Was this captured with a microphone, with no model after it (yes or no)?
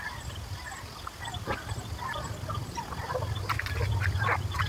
yes